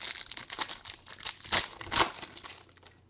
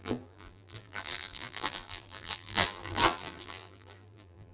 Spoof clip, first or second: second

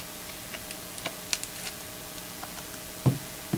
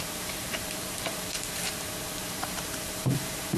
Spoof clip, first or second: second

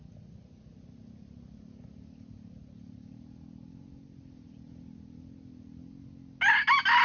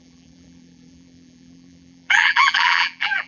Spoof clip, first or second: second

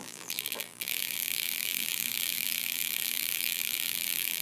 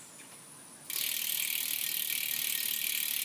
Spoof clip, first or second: first